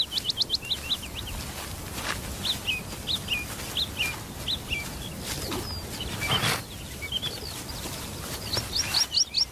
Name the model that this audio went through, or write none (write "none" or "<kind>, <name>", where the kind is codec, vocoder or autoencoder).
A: none